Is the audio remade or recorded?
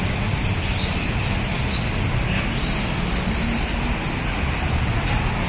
recorded